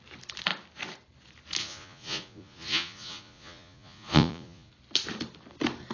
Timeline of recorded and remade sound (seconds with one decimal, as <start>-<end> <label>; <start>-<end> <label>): 0.0-1.6 recorded; 1.6-4.7 remade; 4.7-5.9 recorded